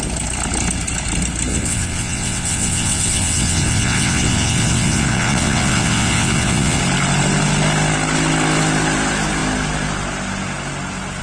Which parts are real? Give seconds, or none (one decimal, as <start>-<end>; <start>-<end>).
0.0-1.5; 6.8-11.2